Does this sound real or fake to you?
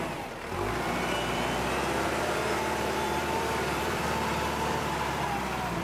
fake